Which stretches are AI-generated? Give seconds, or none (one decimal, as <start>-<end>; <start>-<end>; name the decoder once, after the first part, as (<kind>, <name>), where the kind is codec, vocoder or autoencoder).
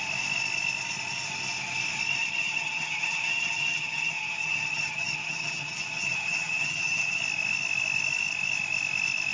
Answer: 2.2-7.2 (vocoder, HiFi-GAN)